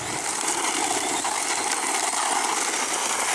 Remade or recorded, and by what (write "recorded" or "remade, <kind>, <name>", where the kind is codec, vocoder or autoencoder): recorded